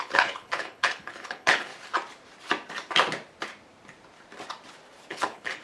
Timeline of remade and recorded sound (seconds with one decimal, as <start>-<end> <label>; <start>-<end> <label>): 0.0-1.7 remade; 1.7-5.1 recorded; 5.1-5.6 remade